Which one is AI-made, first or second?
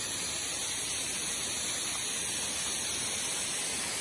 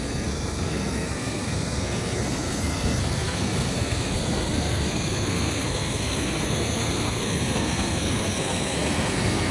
second